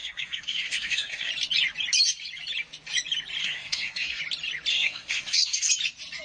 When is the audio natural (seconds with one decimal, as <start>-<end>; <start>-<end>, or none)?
1.3-3.4; 4.2-4.7; 5.7-6.2